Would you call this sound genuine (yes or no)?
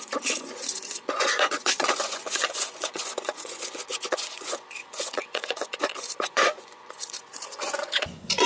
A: no